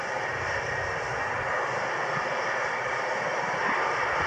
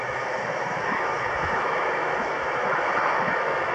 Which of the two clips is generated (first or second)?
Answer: second